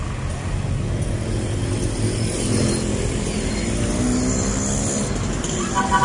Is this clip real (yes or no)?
yes